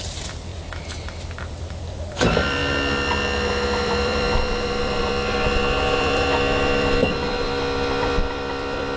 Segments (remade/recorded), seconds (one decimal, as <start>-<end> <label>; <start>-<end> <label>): 0.0-2.6 remade; 2.6-3.5 recorded; 3.5-9.0 remade